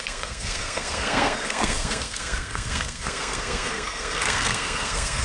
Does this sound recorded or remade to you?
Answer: remade